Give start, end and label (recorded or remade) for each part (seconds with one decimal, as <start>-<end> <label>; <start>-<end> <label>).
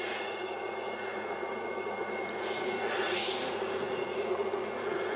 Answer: 0.0-5.2 remade